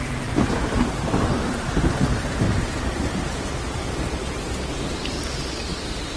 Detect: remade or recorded remade